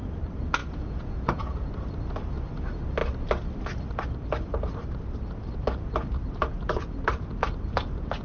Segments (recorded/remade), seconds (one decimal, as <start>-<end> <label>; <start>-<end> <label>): 0.0-0.6 recorded; 0.6-1.7 remade; 1.7-8.2 recorded